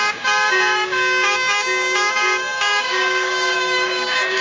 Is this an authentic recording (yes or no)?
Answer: no